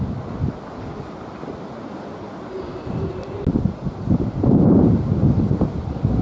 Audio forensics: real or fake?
real